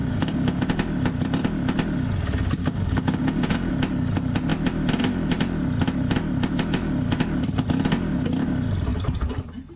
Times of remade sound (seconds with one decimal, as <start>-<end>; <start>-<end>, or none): 0.0-0.6; 2.6-3.7